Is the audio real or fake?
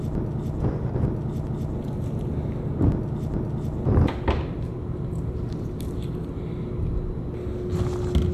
real